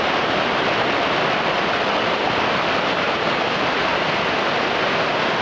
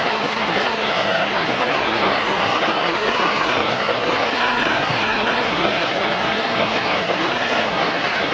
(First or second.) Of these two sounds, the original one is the first